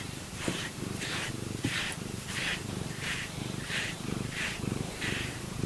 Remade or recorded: remade